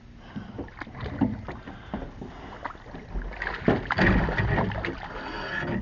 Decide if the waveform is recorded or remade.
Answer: recorded